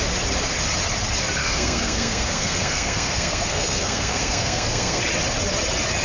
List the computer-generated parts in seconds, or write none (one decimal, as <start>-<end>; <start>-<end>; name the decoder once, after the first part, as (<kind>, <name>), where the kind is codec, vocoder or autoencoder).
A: 1.4-5.0 (codec, SNAC)